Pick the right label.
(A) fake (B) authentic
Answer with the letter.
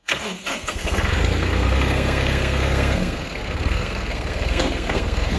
A